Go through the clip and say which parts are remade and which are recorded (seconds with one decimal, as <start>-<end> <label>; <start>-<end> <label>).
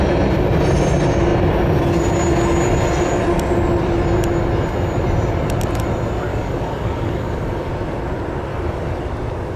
0.0-6.3 recorded; 6.3-7.7 remade; 7.7-8.5 recorded; 8.5-9.0 remade; 9.0-9.6 recorded